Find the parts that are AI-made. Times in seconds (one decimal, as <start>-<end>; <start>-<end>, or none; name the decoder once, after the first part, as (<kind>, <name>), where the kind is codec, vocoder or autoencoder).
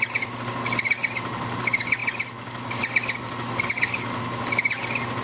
none